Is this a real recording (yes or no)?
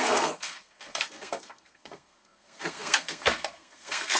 no